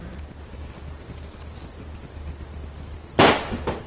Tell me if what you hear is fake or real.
real